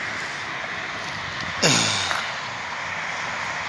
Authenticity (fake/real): real